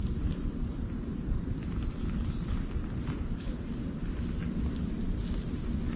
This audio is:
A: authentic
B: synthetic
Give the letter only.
A